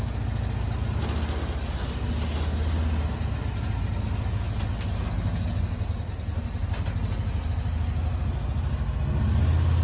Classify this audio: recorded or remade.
recorded